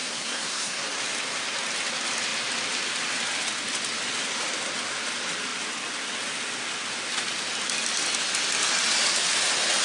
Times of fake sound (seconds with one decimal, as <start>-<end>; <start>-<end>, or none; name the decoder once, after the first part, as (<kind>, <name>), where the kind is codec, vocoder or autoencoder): 0.0-0.8 (codec, SNAC)